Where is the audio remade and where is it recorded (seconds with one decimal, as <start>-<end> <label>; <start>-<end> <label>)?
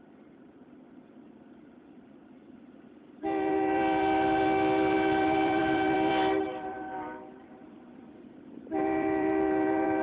0.0-10.0 remade